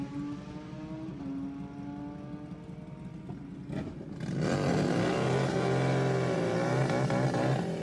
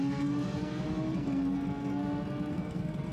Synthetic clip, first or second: second